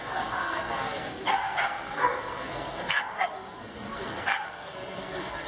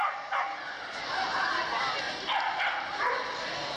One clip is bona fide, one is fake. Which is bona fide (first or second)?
second